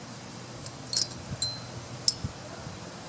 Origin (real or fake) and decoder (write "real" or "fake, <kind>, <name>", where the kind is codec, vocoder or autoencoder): real